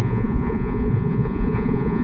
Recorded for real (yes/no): no